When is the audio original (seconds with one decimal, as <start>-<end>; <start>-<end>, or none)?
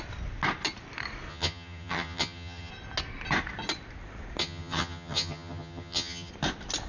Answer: 0.0-1.3; 2.7-4.4; 6.3-6.9